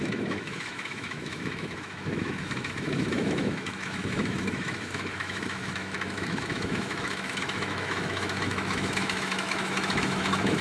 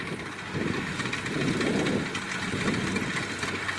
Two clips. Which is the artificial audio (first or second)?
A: first